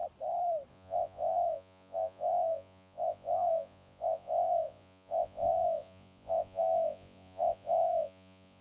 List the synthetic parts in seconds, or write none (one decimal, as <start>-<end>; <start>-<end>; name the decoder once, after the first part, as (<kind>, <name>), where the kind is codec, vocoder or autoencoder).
0.7-8.6 (vocoder, Vocos)